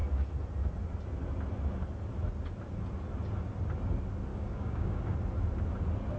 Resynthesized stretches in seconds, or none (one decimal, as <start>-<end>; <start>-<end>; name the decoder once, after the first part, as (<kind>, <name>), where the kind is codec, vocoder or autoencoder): 4.3-5.0 (codec, DAC)